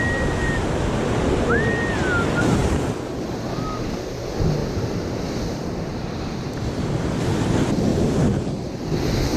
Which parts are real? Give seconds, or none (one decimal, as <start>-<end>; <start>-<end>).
0.0-2.6; 3.3-4.6; 6.5-7.9; 8.5-9.4